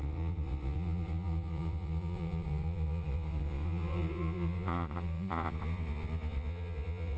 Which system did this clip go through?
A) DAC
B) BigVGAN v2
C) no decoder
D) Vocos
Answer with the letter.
D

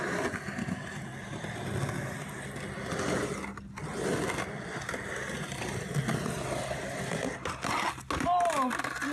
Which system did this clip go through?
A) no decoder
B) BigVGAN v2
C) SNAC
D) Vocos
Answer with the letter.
A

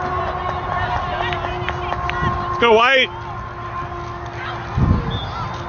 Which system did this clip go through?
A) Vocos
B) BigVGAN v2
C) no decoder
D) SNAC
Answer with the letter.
C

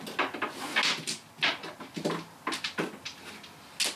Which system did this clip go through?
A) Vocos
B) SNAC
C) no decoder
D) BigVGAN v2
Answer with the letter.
C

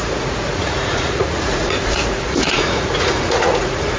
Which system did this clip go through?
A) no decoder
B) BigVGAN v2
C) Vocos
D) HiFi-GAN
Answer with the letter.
C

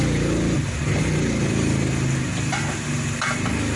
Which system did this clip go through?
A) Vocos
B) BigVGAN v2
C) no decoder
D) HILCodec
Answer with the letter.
C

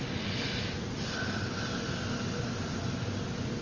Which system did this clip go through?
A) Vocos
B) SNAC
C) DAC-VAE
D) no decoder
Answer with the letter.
D